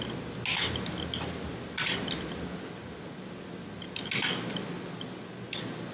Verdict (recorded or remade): recorded